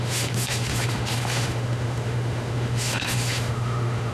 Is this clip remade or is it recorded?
remade